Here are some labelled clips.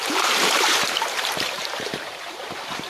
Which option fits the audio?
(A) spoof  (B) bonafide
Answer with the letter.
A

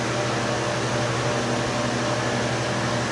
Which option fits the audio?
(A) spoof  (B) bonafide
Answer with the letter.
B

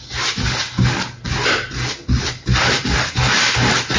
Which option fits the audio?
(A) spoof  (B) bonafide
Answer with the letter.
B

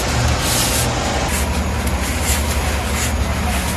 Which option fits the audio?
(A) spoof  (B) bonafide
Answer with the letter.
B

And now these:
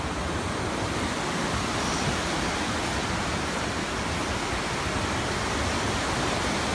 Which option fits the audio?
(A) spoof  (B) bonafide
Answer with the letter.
B